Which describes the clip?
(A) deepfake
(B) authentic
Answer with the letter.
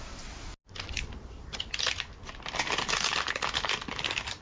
B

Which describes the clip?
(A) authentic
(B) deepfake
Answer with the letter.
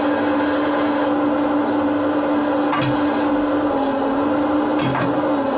A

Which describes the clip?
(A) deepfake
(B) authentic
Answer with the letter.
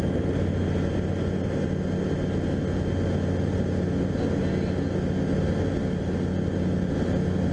B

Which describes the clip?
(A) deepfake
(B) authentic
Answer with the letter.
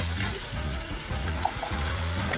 A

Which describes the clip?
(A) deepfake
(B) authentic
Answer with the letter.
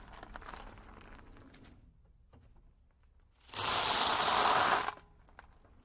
B